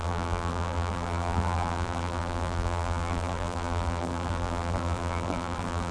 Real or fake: fake